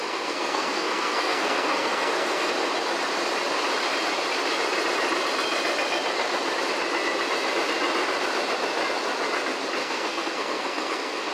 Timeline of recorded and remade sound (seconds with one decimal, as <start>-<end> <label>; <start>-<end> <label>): 0.0-2.5 remade; 2.5-9.8 recorded; 9.8-11.3 remade